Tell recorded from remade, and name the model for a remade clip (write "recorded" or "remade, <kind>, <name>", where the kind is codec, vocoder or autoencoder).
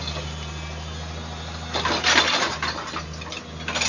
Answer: recorded